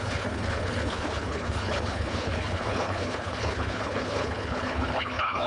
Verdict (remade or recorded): remade